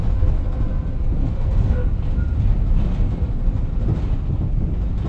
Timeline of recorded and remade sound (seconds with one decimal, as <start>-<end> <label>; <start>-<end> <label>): 0.0-1.2 recorded; 1.2-1.7 remade; 1.7-5.1 recorded